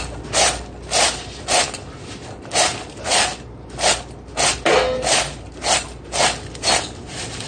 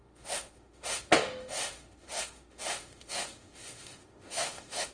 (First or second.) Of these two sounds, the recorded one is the first